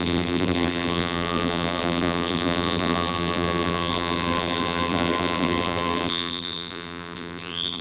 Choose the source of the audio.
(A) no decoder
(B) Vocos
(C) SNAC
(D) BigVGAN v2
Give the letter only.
D